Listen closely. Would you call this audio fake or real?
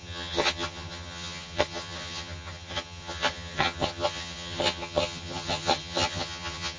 fake